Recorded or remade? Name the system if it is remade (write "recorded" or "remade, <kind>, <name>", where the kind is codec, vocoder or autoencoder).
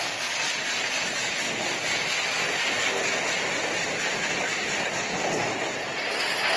recorded